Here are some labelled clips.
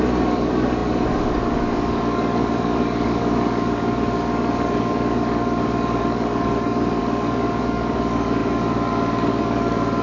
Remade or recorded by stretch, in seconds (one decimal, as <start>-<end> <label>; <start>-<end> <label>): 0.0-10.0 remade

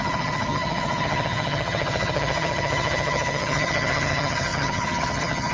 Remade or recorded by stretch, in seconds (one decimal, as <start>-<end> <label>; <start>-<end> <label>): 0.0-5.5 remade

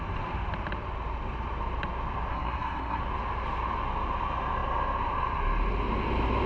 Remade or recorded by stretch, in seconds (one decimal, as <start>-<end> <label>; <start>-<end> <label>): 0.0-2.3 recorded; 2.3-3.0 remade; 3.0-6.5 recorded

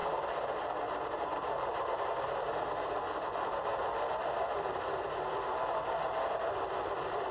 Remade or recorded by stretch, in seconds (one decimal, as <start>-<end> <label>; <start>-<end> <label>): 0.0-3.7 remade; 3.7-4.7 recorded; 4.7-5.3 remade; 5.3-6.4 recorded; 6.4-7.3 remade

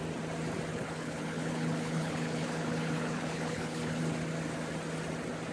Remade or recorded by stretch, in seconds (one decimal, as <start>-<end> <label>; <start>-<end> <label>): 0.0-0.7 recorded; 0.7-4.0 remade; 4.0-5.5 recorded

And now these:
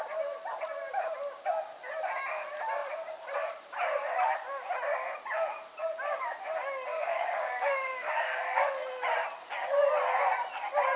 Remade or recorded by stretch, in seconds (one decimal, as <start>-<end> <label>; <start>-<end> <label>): 0.0-6.9 recorded; 6.9-8.6 remade; 8.6-11.0 recorded